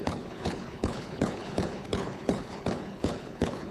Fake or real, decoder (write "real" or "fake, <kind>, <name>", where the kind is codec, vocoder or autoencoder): fake, codec, HILCodec